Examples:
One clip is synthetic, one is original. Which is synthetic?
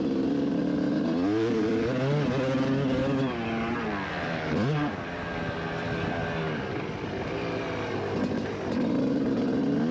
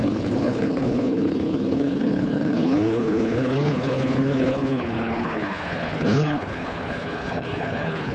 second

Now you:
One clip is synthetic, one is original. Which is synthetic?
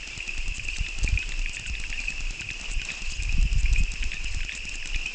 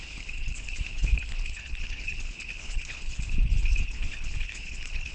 second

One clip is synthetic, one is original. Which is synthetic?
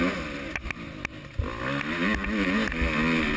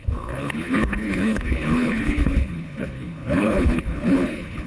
second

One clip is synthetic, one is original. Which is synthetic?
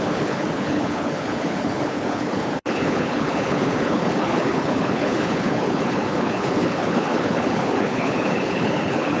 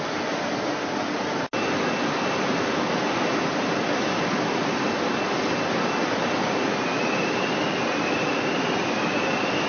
first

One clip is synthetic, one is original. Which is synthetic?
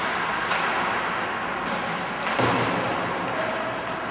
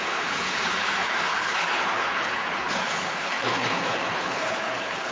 second